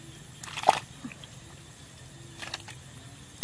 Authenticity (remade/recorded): recorded